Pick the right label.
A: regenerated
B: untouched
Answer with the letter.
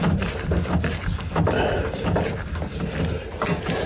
B